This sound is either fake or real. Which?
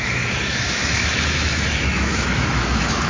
fake